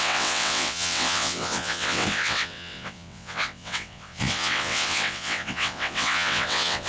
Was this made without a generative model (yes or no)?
no